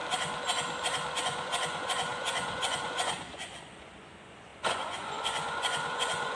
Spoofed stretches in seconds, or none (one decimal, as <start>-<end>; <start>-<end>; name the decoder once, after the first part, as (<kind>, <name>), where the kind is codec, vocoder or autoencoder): 1.1-6.4 (vocoder, Vocos)